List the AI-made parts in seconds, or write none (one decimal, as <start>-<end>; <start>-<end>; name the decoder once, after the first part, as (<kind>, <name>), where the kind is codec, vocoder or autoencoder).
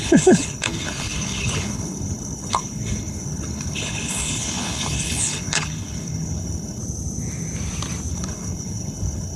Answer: 0.0-6.8 (codec, HILCodec); 8.1-9.4